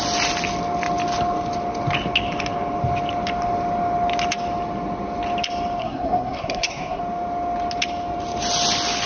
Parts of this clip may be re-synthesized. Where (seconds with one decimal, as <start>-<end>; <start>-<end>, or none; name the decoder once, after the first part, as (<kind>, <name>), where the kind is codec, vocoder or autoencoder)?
5.8-7.0 (codec, SNAC)